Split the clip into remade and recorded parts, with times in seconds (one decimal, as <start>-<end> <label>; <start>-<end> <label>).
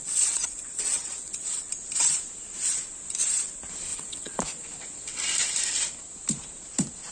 0.0-1.7 remade; 1.7-3.9 recorded; 3.9-4.4 remade; 4.4-7.1 recorded